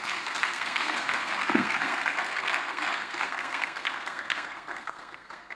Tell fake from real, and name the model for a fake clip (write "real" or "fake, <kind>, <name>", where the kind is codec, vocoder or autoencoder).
fake, codec, SNAC